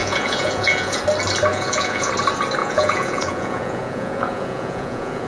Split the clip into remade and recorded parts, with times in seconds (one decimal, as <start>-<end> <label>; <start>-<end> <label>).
0.0-1.0 remade; 1.0-1.5 recorded; 1.5-2.1 remade; 2.1-2.6 recorded; 2.6-5.3 remade